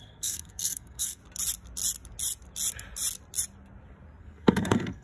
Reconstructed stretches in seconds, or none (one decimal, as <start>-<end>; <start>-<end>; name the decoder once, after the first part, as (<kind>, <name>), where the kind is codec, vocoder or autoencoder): 0.0-1.2 (codec, SNAC); 4.2-5.0